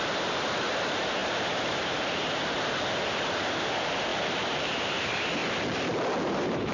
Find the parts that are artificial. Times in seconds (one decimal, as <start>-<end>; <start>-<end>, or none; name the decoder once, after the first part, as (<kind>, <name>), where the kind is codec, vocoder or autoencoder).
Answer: 0.0-5.4 (vocoder, BigVGAN v2); 6.2-6.7